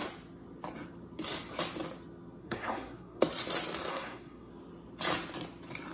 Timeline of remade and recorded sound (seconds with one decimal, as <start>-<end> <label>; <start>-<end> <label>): 0.0-2.4 recorded; 2.4-3.2 remade; 3.2-3.9 recorded; 3.9-4.5 remade; 4.5-5.9 recorded